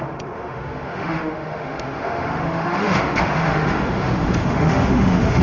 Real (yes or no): no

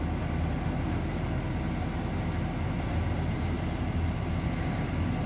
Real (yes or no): yes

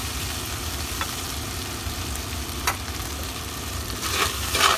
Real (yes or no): no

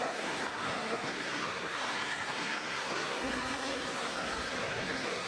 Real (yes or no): no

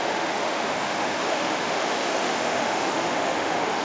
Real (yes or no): no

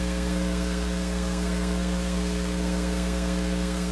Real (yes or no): no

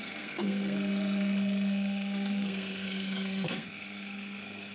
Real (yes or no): no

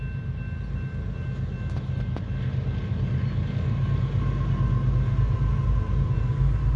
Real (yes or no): yes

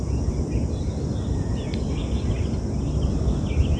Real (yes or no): yes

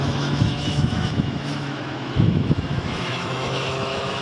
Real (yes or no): no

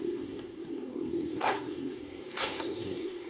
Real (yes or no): no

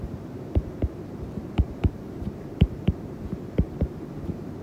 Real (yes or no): no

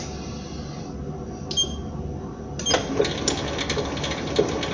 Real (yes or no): yes